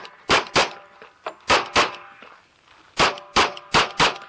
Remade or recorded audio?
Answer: recorded